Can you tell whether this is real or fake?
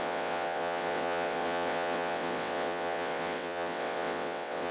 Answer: fake